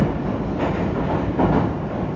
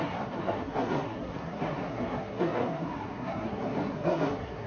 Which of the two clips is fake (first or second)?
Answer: second